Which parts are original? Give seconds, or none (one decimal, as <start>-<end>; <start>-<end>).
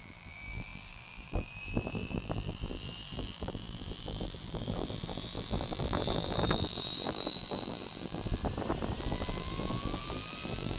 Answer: 8.4-9.0